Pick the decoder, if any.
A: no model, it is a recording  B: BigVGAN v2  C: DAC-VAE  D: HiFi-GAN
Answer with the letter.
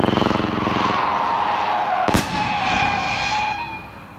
A